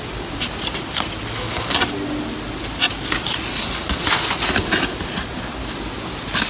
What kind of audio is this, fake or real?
real